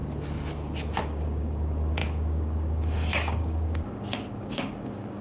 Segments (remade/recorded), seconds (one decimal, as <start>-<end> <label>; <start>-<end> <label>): 0.0-1.0 recorded; 1.0-5.2 remade